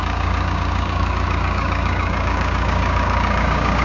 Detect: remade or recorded remade